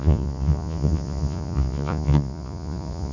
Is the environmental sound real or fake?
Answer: fake